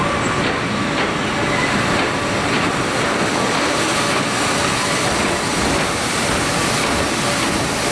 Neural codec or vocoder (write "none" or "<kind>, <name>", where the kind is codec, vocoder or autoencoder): none